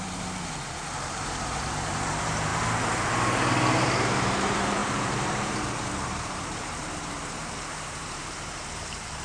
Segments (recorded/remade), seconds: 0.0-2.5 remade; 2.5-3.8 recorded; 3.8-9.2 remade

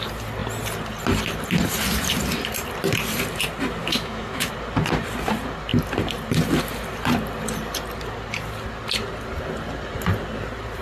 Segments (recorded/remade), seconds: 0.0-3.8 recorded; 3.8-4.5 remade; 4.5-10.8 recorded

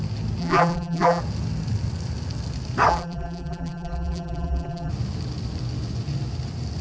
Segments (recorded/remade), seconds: 0.0-0.4 recorded; 0.4-1.2 remade; 1.2-2.9 recorded; 2.9-4.9 remade; 4.9-6.8 recorded

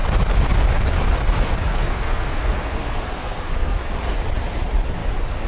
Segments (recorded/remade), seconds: 0.0-1.7 recorded; 1.7-3.9 remade; 3.9-5.5 recorded

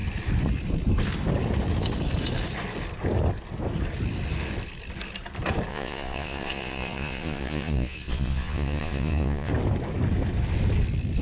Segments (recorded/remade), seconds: 0.0-5.7 recorded; 5.7-9.5 remade; 9.5-11.2 recorded

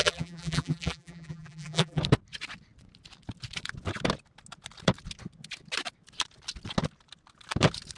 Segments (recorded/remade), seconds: 0.0-2.0 remade; 2.0-8.0 recorded